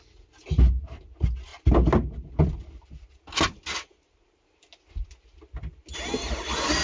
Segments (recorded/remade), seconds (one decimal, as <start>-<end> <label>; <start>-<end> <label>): 0.0-6.8 recorded